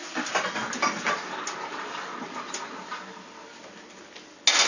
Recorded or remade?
recorded